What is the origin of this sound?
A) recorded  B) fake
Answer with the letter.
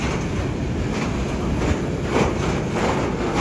A